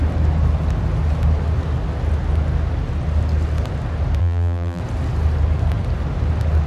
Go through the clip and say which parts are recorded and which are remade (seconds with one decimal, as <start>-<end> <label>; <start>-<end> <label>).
0.0-4.2 recorded; 4.2-4.8 remade; 4.8-6.7 recorded